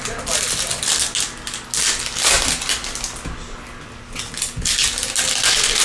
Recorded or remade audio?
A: recorded